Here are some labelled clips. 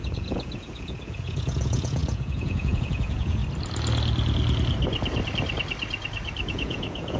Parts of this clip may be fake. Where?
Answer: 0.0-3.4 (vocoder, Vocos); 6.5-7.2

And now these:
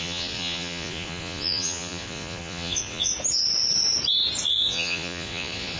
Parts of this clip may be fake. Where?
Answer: 0.0-3.1 (vocoder, Vocos); 4.5-5.8